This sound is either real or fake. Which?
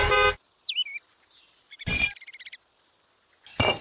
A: real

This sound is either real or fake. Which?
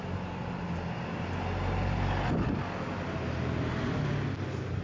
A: real